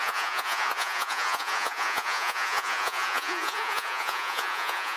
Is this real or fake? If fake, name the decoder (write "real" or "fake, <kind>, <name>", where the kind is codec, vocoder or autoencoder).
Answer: fake, vocoder, Vocos